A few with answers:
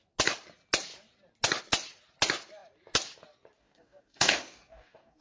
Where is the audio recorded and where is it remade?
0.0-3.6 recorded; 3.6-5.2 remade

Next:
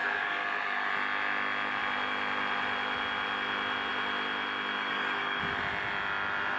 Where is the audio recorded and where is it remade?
0.0-0.9 remade; 0.9-4.8 recorded; 4.8-5.4 remade; 5.4-6.6 recorded

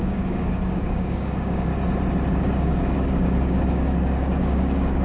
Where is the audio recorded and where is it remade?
0.0-1.7 remade; 1.7-2.3 recorded; 2.3-5.0 remade

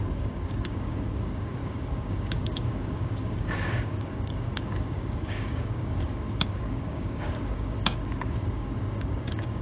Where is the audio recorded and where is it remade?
0.0-9.6 remade

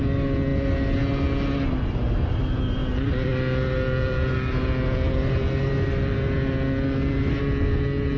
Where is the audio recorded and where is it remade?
0.0-8.2 recorded

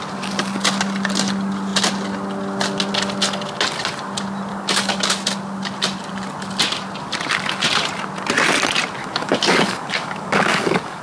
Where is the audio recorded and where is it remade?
0.0-4.5 recorded; 4.5-5.1 remade; 5.1-9.0 recorded; 9.0-11.0 remade

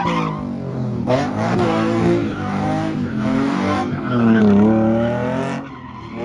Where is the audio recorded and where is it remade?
0.0-0.7 recorded; 0.7-4.4 remade; 4.4-6.2 recorded

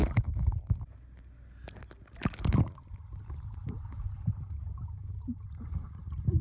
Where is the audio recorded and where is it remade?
0.0-6.4 recorded